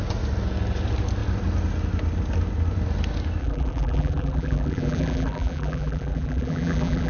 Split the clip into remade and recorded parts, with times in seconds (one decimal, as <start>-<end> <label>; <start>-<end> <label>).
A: 0.0-3.4 recorded; 3.4-7.1 remade